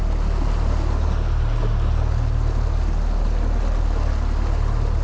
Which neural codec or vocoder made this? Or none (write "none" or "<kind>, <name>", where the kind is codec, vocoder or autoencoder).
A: none